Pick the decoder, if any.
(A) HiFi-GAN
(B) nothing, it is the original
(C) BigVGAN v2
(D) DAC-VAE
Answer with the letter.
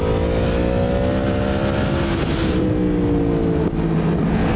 B